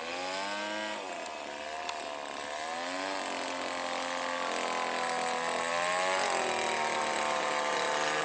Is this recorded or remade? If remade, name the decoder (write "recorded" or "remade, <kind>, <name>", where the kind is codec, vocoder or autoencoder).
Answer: recorded